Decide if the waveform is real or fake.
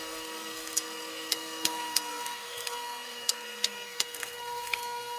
fake